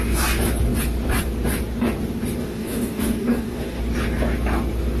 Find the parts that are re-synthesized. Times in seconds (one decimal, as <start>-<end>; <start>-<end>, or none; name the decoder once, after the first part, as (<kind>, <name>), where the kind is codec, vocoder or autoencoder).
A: 2.4-3.8 (codec, DAC)